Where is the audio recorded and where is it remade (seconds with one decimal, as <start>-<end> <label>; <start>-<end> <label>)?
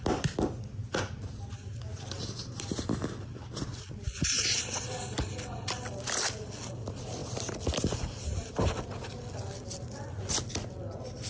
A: 0.0-11.3 recorded